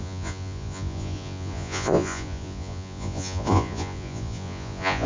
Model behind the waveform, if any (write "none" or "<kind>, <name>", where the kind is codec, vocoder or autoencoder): vocoder, Vocos